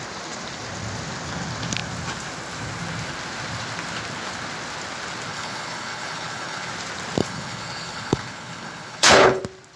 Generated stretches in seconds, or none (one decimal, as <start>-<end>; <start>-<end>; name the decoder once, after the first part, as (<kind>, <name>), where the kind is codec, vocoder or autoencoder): 5.3-6.7 (codec, HILCodec); 7.2-9.4

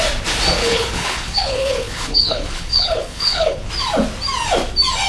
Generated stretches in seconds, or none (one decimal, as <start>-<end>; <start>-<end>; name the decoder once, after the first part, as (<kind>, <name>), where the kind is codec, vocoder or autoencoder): 0.6-3.7 (codec, HILCodec)

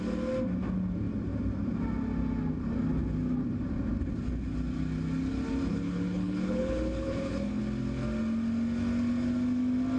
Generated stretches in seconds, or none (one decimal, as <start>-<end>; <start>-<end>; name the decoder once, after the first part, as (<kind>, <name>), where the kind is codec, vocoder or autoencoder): 5.7-7.6 (codec, HILCodec)

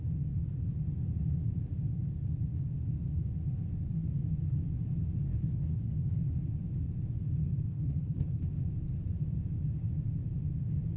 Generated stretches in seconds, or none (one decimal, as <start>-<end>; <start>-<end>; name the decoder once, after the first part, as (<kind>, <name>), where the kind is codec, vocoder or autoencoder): 5.3-6.1 (codec, HILCodec); 7.4-8.5

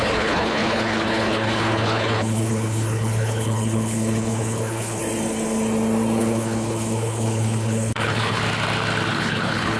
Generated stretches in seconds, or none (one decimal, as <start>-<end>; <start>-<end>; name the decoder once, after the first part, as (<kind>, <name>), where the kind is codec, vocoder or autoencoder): 0.0-5.0 (codec, HILCodec); 6.2-8.4; 9.1-9.8

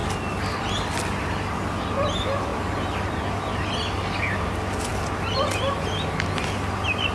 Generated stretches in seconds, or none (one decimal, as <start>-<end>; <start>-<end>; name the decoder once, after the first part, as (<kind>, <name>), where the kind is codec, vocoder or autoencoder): none

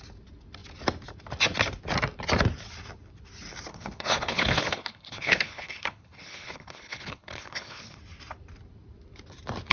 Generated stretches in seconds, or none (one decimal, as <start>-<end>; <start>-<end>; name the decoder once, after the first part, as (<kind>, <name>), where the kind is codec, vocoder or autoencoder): 3.7-8.0 (codec, HILCodec)